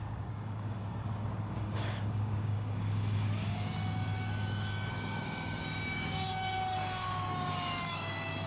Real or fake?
fake